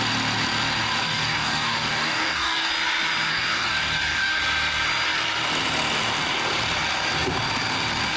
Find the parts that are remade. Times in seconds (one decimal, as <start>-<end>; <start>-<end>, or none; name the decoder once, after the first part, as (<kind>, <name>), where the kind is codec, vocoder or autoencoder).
1.0-2.7 (codec, DAC); 3.3-4.4

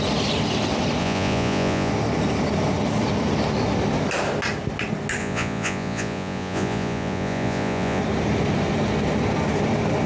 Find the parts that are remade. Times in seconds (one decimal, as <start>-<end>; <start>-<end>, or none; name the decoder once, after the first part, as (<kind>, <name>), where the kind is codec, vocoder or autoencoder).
1.0-1.9 (vocoder, Vocos); 5.2-8.0